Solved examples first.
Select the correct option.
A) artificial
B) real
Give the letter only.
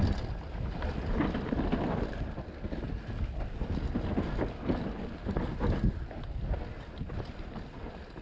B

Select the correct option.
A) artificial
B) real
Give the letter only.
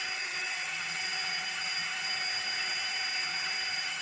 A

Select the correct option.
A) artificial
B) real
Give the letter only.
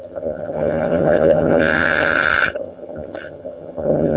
A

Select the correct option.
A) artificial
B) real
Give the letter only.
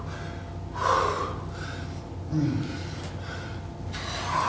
B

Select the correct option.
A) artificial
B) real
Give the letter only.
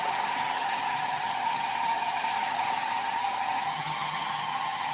A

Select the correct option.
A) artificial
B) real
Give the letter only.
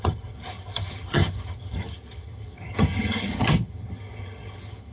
A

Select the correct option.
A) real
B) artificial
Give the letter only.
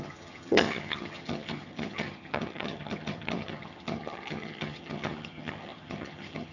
B